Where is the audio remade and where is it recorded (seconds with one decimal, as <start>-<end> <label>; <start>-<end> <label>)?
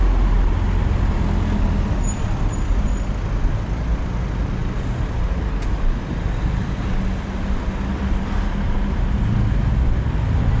0.0-10.6 recorded